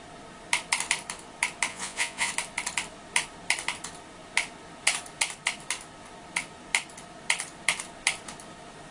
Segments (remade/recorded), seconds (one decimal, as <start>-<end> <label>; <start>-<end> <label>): 0.0-1.7 recorded; 1.7-2.3 remade; 2.3-8.9 recorded

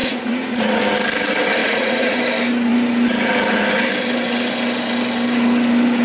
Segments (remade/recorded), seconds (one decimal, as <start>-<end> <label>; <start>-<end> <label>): 0.0-0.8 remade; 0.8-1.6 recorded; 1.6-2.2 remade; 2.2-6.0 recorded

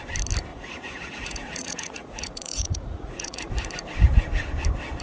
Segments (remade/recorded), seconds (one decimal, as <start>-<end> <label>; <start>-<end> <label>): 0.0-0.5 recorded; 0.5-3.5 remade; 3.5-5.0 recorded

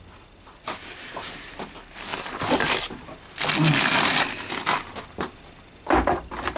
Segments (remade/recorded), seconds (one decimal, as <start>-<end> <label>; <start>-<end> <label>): 0.0-6.6 recorded

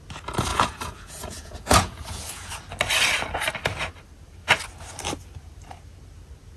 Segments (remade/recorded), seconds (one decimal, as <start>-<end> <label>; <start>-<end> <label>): 0.0-0.5 recorded; 0.5-2.5 remade; 2.5-6.6 recorded

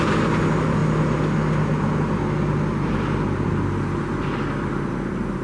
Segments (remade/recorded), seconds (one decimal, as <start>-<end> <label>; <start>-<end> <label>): 0.0-5.4 recorded